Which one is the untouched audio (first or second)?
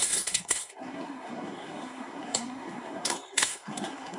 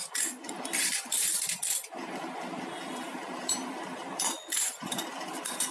second